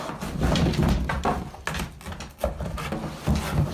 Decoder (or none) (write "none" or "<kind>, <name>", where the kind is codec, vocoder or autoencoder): none